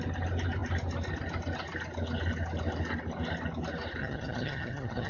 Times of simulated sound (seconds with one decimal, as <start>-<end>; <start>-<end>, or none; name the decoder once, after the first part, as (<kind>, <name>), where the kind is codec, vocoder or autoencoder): 4.0-5.1 (vocoder, HiFi-GAN)